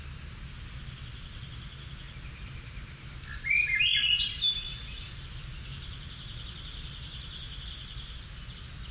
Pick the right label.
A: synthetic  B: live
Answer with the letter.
B